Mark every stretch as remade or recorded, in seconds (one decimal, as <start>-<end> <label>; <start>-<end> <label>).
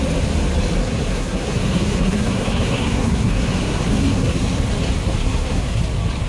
0.0-0.8 recorded; 0.8-4.6 remade; 4.6-5.2 recorded; 5.2-5.8 remade; 5.8-6.3 recorded